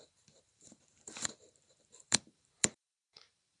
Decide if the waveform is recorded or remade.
remade